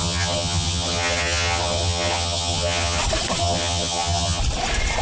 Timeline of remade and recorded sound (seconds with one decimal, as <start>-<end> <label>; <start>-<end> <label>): 0.0-3.0 remade; 3.0-3.4 recorded; 3.4-4.4 remade; 4.4-5.0 recorded